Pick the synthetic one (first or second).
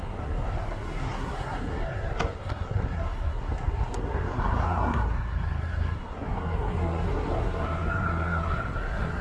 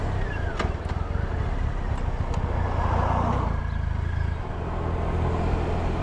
first